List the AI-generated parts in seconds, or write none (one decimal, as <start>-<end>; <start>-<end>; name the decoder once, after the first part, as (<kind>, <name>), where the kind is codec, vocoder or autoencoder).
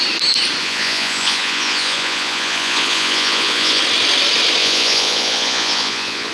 0.6-3.8 (vocoder, Vocos); 4.6-6.3